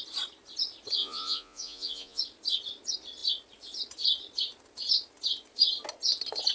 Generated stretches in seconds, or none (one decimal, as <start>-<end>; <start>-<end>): 1.0-2.2